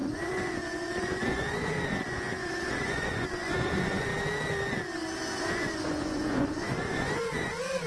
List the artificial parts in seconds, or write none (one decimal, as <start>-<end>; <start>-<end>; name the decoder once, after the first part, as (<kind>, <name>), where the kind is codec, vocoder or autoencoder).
0.0-4.1 (vocoder, Vocos); 5.4-7.9